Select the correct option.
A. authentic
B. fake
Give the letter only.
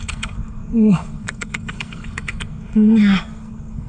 B